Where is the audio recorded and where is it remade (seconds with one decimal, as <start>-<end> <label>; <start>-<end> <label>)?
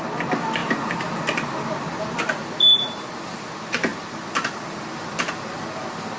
0.0-6.2 recorded